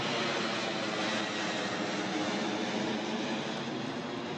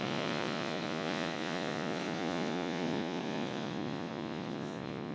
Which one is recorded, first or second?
first